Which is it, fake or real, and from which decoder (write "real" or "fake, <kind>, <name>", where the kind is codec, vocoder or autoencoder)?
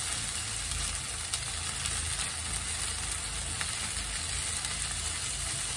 real